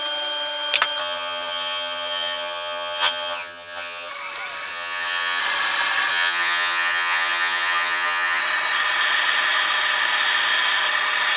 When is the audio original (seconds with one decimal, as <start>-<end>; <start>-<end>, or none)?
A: 0.0-1.0; 4.1-4.7; 5.4-6.1; 8.4-11.4